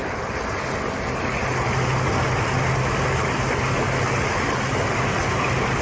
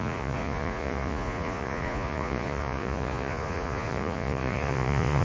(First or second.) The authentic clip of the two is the first